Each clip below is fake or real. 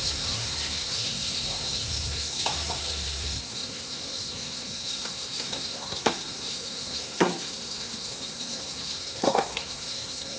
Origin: fake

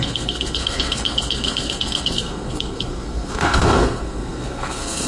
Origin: fake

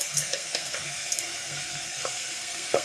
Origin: fake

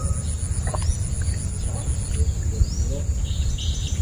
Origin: real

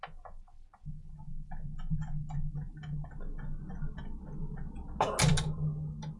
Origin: real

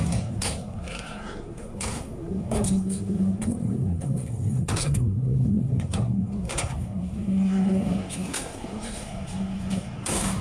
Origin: fake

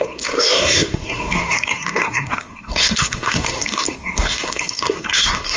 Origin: fake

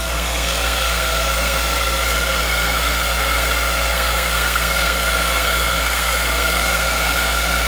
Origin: fake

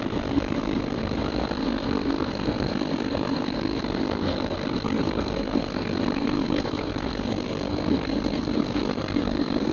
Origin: fake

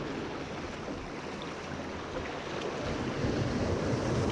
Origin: real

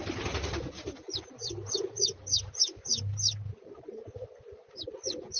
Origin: real